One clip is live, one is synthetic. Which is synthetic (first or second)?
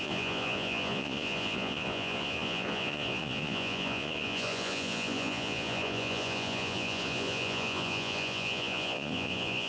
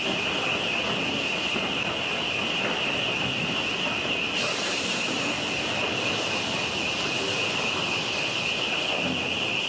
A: first